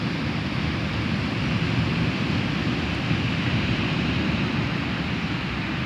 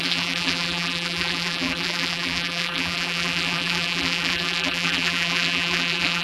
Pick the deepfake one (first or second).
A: second